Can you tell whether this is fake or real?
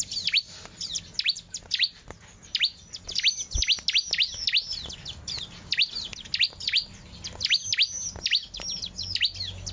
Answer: real